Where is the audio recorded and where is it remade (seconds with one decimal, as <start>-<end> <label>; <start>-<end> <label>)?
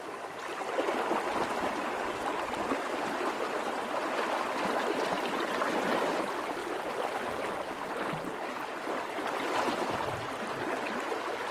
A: 0.0-11.5 recorded